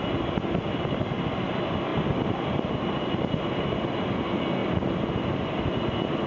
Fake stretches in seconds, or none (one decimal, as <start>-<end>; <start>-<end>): none